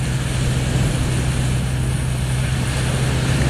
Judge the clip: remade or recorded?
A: recorded